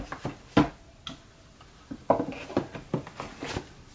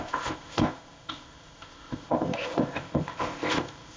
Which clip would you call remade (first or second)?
second